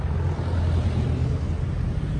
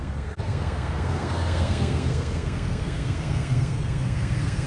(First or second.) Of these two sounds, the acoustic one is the first